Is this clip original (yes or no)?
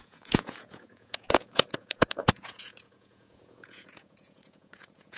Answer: no